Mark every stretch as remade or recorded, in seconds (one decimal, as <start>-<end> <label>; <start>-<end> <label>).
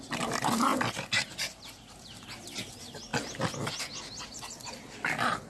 0.0-5.5 recorded